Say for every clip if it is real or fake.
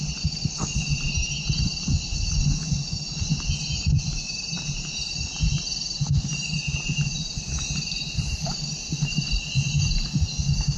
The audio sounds real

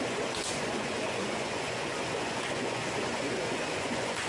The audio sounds fake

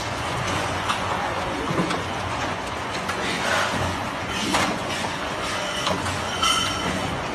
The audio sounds fake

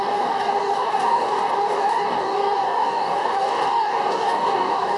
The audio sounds fake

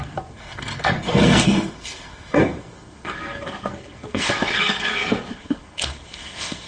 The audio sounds fake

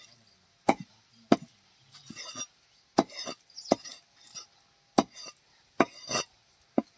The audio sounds real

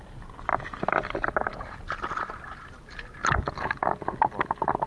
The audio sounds real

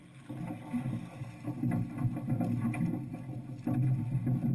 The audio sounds real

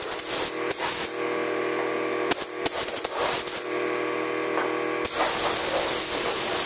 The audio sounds real